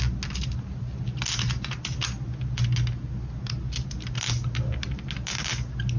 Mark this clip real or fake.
real